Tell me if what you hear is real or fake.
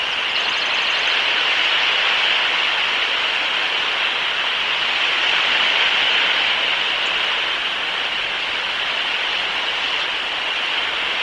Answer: real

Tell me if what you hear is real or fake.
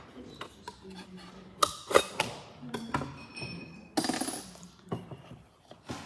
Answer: real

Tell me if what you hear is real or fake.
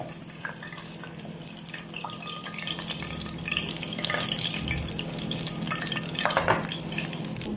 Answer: fake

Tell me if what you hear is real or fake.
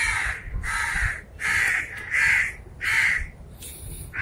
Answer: real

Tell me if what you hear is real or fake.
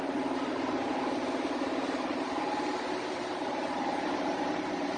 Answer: fake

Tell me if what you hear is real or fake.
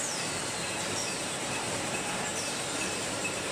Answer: fake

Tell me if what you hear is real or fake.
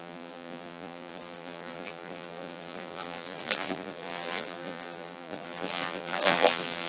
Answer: fake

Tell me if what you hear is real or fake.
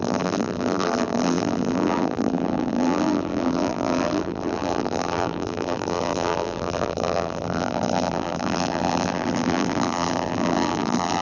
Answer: fake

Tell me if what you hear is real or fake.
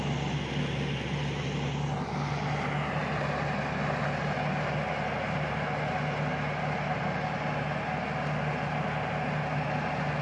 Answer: real